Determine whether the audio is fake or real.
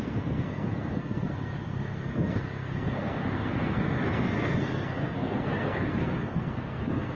fake